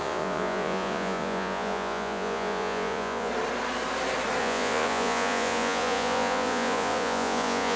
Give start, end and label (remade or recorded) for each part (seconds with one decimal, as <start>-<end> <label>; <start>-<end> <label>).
0.0-3.3 remade; 3.3-4.4 recorded; 4.4-7.8 remade